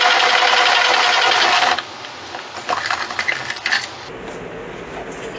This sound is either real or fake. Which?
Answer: real